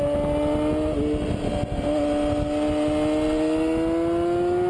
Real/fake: real